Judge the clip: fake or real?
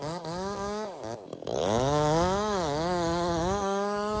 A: fake